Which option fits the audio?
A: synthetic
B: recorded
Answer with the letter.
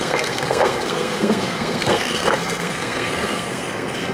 A